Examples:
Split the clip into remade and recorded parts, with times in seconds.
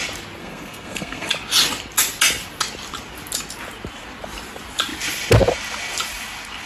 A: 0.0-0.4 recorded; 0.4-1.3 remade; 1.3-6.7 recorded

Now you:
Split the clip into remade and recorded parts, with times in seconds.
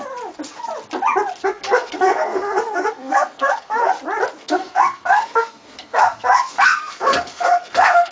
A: 0.0-1.4 recorded; 1.4-3.9 remade; 3.9-4.4 recorded; 4.4-8.1 remade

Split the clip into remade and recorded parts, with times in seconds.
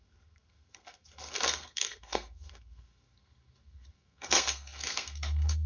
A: 0.0-5.7 remade